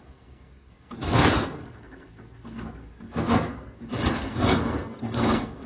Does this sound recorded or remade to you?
remade